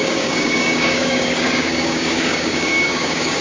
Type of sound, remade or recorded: remade